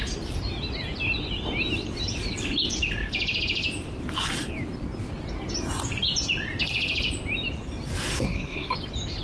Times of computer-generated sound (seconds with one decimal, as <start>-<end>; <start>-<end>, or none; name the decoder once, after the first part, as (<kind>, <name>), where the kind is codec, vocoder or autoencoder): 8.1-8.7 (codec, SNAC)

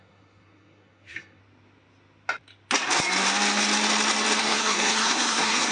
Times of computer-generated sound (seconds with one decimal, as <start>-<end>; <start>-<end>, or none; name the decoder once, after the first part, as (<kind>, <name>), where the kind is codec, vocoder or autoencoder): 0.0-1.4 (codec, SNAC); 4.4-5.7